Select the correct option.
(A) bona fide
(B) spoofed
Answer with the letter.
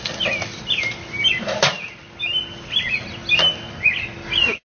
A